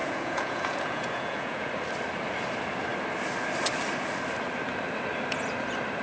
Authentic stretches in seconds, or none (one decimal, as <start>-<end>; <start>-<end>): 1.7-6.0